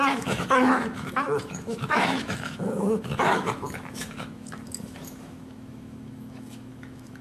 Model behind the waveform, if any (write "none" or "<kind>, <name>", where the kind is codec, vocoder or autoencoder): autoencoder, DAC-VAE